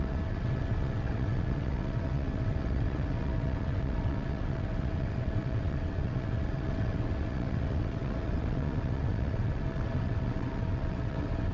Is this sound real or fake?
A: fake